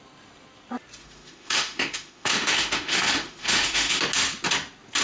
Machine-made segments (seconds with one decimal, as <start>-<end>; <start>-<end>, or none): 1.0-4.0